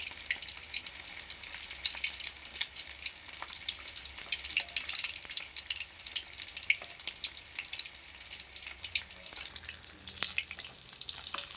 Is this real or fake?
real